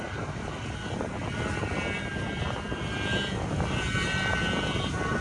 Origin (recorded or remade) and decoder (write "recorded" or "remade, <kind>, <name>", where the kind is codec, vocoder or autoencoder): recorded